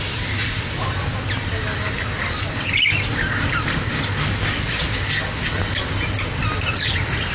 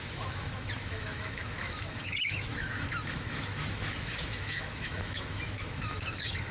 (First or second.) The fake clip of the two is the second